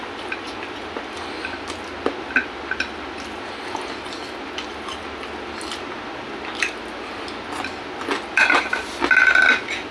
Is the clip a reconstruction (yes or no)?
no